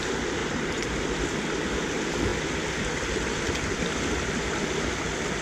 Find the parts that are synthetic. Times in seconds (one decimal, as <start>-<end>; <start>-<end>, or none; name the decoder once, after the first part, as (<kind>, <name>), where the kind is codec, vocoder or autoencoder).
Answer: 0.4-1.1 (vocoder, BigVGAN v2)